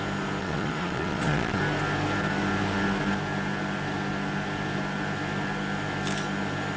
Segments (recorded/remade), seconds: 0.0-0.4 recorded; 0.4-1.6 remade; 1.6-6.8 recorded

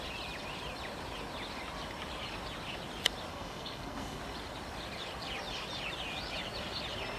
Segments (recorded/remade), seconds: 0.0-3.3 recorded; 3.3-4.2 remade; 4.2-7.2 recorded

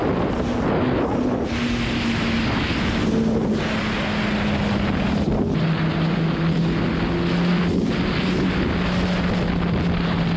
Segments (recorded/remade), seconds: 0.0-10.4 recorded

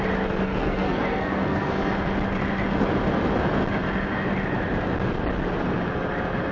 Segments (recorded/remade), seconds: 0.0-0.6 recorded; 0.6-1.7 remade; 1.7-6.5 recorded

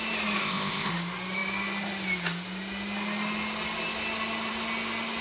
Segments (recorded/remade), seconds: 0.0-0.4 recorded; 0.4-0.9 remade; 0.9-5.2 recorded